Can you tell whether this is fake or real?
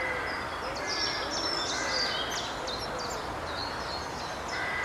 real